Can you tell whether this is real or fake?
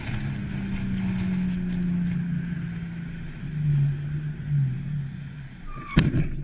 real